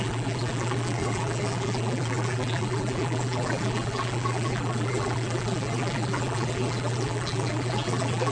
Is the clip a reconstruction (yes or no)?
yes